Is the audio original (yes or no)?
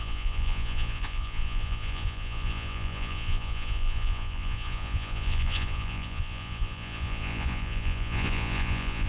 no